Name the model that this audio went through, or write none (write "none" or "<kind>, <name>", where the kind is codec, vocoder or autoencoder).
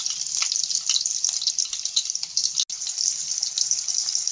none